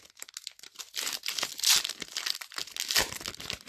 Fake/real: real